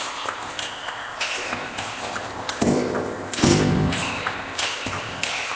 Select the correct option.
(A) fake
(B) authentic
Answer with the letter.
A